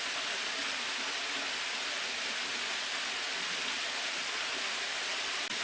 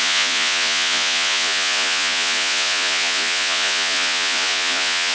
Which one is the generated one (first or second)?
second